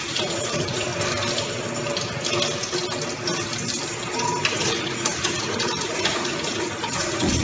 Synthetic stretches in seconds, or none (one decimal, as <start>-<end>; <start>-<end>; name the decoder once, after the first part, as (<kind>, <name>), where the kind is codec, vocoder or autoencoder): 0.0-0.9 (vocoder, Vocos); 4.5-7.4

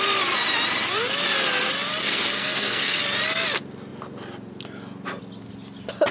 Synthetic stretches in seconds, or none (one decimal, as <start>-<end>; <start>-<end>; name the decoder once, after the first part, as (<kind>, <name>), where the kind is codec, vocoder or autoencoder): 2.0-3.0 (codec, SNAC)